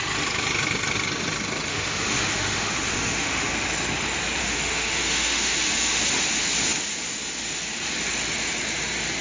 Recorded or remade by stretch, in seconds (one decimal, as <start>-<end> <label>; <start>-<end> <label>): 0.0-1.7 recorded; 1.7-3.5 remade; 3.5-4.4 recorded; 4.4-6.0 remade; 6.0-9.2 recorded